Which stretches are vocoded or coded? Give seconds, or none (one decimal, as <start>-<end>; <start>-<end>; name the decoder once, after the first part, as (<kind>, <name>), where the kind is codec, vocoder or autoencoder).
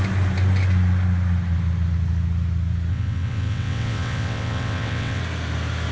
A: 2.9-5.2 (vocoder, WaveNeXt)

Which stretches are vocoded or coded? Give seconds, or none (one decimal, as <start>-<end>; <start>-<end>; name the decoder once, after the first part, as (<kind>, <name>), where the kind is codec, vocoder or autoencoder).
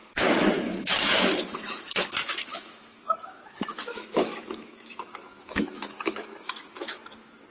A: 0.0-2.1 (autoencoder, DAC-VAE); 2.5-7.0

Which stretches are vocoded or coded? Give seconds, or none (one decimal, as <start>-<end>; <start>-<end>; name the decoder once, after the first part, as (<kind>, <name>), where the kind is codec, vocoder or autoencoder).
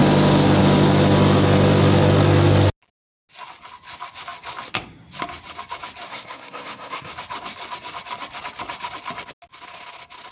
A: 6.1-7.1 (codec, SNAC)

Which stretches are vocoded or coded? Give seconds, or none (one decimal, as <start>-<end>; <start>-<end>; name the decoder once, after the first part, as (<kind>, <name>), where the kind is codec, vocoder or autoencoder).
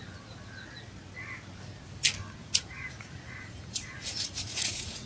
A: 2.4-5.1 (vocoder, Vocos)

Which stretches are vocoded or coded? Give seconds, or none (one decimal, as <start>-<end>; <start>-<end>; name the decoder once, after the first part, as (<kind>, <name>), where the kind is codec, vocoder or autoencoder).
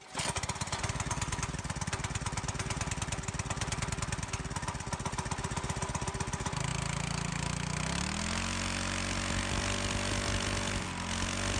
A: none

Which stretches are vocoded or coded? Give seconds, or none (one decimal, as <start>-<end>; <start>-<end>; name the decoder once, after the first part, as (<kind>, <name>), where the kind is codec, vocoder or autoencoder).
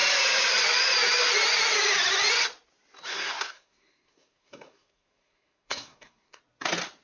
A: 3.1-6.4 (codec, SNAC)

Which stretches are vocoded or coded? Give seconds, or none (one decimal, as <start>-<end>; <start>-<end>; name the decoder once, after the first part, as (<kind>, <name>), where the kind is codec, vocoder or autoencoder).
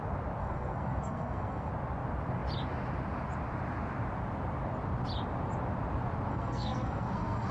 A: 0.4-1.7 (codec, SNAC); 6.3-7.5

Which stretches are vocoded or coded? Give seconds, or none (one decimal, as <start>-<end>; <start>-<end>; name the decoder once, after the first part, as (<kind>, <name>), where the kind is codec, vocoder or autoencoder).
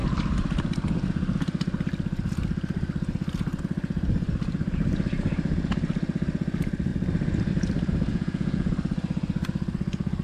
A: 8.1-8.7 (vocoder, Vocos)